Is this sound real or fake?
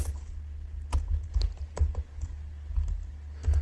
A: real